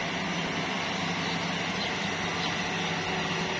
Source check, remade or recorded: recorded